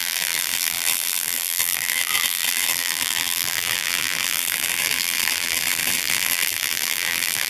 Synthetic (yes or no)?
yes